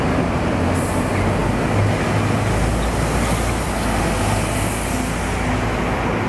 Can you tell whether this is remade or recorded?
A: recorded